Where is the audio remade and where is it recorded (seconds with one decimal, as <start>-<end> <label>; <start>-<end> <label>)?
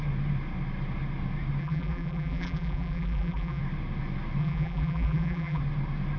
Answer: 0.0-1.6 recorded; 1.6-3.6 remade; 3.6-4.4 recorded; 4.4-5.6 remade; 5.6-6.2 recorded